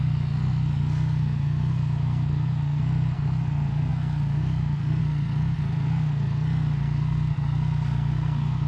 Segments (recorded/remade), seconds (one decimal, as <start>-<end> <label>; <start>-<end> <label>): 0.0-8.7 remade